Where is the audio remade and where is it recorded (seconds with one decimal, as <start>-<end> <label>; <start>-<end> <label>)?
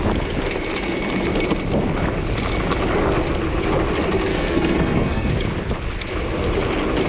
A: 0.0-4.3 recorded; 4.3-5.3 remade; 5.3-7.1 recorded